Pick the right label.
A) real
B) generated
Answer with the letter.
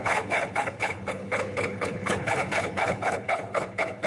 B